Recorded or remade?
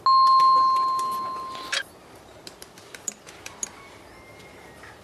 recorded